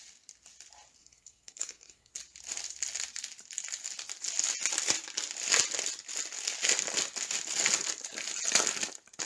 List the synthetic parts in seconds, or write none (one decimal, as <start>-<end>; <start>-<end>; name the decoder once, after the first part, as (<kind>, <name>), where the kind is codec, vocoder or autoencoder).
1.0-2.1 (codec, SNAC)